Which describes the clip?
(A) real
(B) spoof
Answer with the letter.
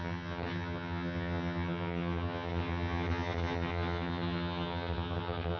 B